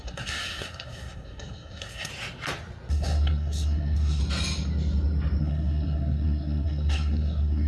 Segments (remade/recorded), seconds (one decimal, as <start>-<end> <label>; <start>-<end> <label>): 0.0-2.1 remade; 2.1-2.9 recorded; 2.9-4.2 remade; 4.2-5.4 recorded; 5.4-7.7 remade